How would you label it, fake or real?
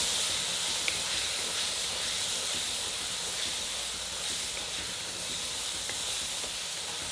real